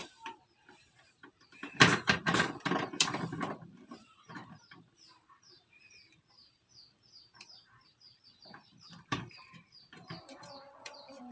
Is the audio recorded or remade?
remade